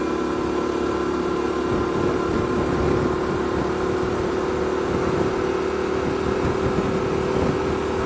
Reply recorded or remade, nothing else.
recorded